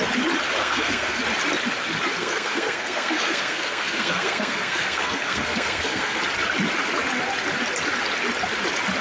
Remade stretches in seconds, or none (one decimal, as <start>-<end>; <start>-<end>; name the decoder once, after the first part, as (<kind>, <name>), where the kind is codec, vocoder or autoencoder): 0.6-1.2 (codec, SNAC); 2.2-6.2

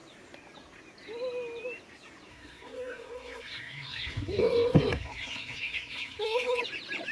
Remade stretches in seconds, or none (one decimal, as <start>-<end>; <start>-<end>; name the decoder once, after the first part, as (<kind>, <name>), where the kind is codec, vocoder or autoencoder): 2.3-6.6 (codec, SNAC)